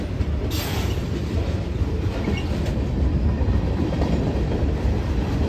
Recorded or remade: remade